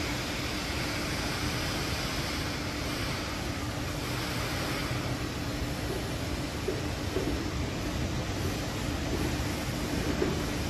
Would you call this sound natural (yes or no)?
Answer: yes